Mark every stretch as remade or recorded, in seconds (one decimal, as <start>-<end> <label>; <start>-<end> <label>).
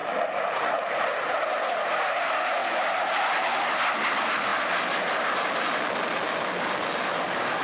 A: 0.0-2.6 recorded; 2.6-3.2 remade; 3.2-4.5 recorded; 4.5-7.0 remade; 7.0-7.6 recorded